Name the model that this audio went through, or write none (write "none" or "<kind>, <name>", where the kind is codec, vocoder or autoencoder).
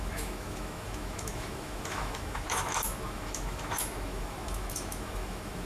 autoencoder, DAC-VAE